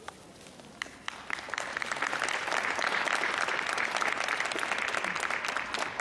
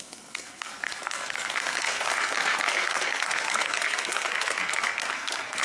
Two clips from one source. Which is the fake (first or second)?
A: second